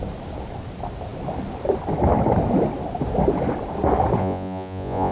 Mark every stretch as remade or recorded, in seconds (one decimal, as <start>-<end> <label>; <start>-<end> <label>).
0.0-4.2 recorded; 4.2-5.1 remade